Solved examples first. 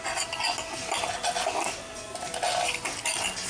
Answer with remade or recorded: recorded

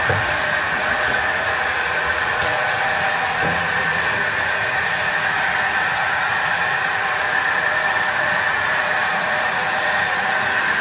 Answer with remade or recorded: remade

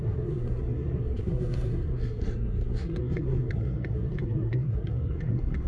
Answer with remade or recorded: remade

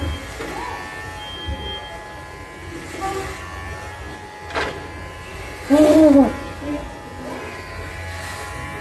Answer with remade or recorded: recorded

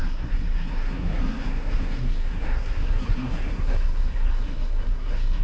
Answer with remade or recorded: remade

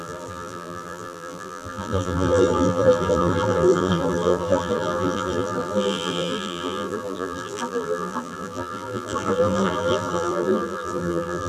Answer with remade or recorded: remade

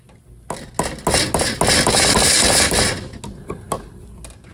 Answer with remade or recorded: recorded